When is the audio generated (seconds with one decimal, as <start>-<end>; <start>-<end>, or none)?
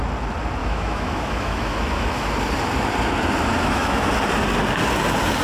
0.6-2.3; 3.5-4.1